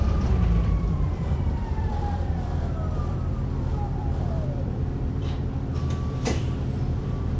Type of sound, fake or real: fake